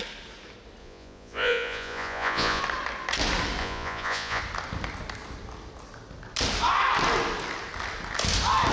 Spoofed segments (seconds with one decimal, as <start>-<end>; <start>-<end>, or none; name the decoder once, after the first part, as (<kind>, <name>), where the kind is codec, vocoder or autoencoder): 0.8-2.6 (vocoder, Vocos); 3.6-4.4